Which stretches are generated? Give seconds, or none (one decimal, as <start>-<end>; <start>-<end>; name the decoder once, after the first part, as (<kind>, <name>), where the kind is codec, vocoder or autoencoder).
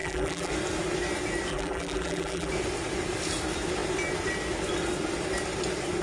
0.0-0.5 (vocoder, BigVGAN v2); 1.5-2.5